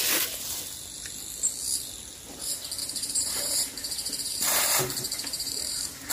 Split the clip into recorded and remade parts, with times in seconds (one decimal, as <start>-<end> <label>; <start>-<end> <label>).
0.0-2.8 recorded; 2.8-6.1 remade